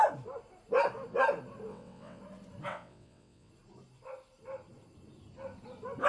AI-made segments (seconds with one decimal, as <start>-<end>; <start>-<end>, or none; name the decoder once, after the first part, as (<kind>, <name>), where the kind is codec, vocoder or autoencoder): 1.7-2.2 (vocoder, WaveNeXt); 2.7-3.5